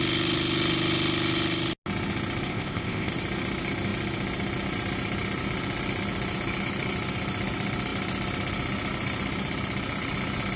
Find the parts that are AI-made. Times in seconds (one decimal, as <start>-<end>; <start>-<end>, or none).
2.5-3.1

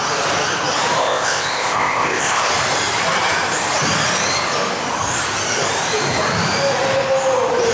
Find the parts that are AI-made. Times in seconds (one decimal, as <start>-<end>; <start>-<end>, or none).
1.0-2.5